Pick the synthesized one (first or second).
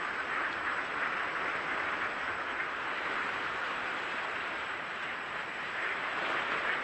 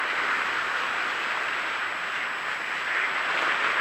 first